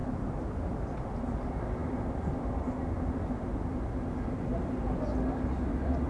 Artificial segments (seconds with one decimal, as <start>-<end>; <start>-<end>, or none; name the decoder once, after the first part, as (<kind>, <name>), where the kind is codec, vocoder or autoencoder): none